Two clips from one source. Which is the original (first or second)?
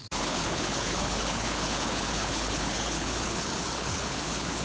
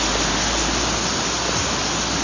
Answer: second